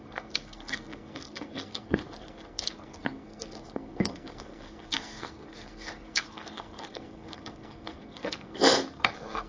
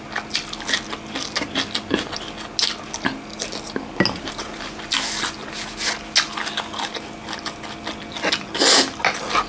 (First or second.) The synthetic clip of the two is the first